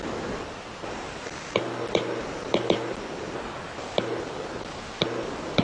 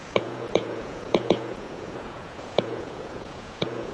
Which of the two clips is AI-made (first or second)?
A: second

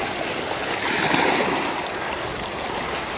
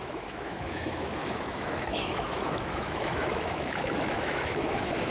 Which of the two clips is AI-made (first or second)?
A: second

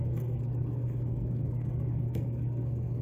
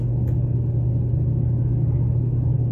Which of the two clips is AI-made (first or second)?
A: first